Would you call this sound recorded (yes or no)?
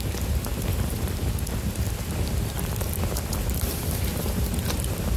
no